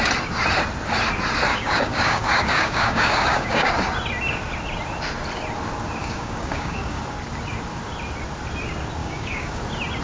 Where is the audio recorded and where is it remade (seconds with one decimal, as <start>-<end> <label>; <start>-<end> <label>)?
0.0-1.5 recorded; 1.5-3.7 remade; 3.7-6.0 recorded; 6.0-7.0 remade; 7.0-9.0 recorded; 9.0-9.6 remade; 9.6-10.0 recorded